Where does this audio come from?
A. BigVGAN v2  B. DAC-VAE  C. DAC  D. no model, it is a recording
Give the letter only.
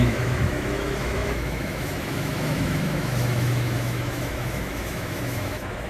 B